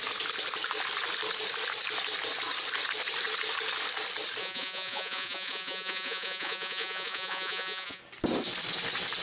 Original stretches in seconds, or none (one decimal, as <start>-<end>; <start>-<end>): 0.0-4.4; 8.0-9.2